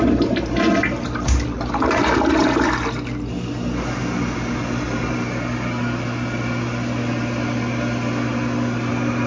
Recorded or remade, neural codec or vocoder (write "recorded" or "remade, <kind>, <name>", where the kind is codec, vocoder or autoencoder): recorded